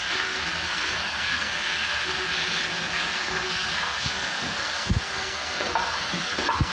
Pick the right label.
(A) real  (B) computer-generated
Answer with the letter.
B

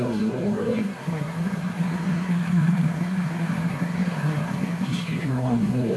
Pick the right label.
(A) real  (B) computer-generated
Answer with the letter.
B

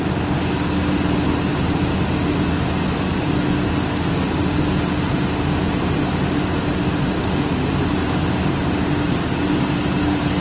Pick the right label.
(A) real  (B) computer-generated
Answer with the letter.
A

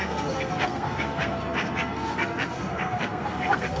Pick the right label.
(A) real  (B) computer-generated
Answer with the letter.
B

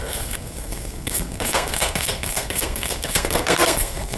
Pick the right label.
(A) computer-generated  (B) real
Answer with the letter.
A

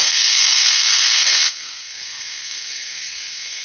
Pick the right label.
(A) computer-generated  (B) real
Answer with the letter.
A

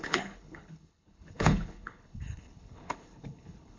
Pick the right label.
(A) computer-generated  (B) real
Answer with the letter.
A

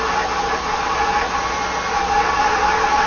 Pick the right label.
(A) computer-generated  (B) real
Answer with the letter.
B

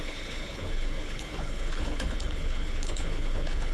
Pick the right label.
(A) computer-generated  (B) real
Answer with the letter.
A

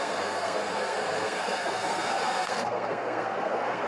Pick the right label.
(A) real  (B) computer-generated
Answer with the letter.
B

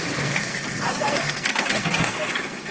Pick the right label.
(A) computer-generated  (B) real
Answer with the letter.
A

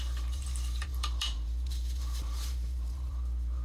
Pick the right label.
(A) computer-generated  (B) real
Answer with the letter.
A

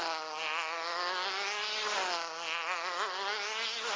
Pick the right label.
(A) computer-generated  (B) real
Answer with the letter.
B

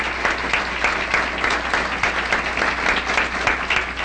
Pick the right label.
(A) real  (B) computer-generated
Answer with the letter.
A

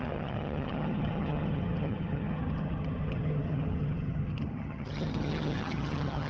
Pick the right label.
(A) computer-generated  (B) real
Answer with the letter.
A